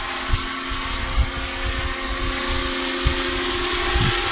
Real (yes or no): yes